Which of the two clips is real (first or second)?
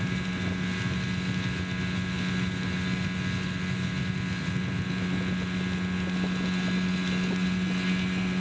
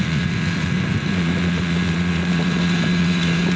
first